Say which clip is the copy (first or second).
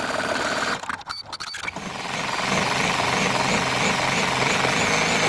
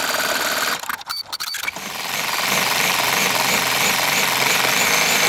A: second